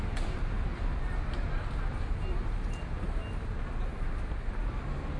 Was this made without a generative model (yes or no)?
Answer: yes